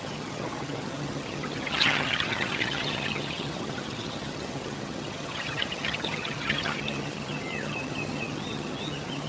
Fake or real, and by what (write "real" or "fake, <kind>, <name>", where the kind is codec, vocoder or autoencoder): fake, vocoder, HiFi-GAN